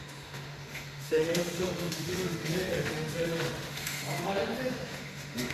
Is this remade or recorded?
remade